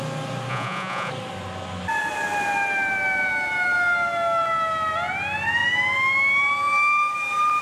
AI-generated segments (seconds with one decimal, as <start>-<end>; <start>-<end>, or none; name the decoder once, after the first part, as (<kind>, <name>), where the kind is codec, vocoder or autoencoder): 0.5-1.1 (vocoder, Vocos)